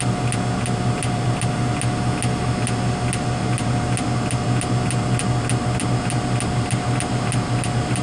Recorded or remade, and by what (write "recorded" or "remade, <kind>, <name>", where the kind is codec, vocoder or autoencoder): recorded